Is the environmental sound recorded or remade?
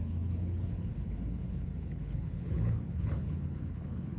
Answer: remade